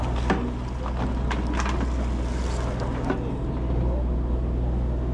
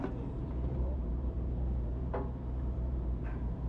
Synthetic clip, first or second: second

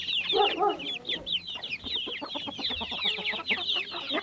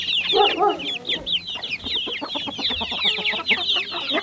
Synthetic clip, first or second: first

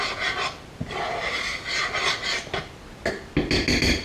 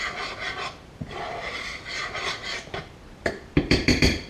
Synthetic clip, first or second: second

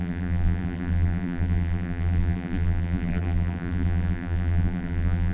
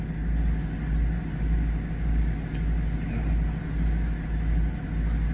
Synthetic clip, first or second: first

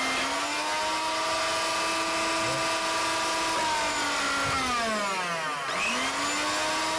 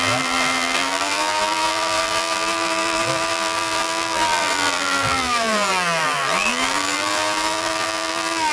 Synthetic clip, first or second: second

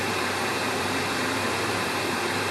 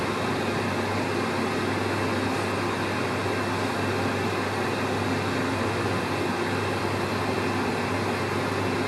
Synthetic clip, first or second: first